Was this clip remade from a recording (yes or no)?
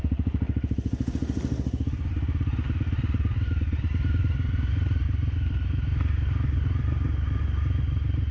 no